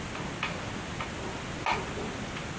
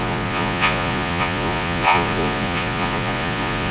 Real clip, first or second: first